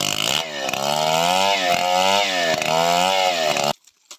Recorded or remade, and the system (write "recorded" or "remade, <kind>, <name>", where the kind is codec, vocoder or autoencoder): recorded